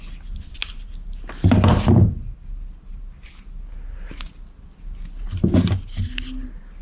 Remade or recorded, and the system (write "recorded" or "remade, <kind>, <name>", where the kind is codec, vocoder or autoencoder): recorded